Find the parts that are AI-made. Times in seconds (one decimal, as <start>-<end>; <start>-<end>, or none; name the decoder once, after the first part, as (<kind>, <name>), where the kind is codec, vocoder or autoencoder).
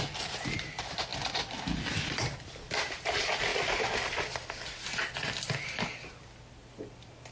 none